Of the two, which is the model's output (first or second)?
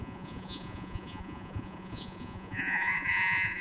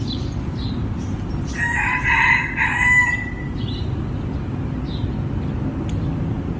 first